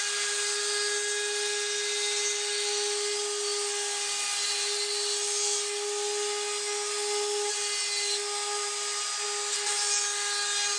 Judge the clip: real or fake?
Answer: real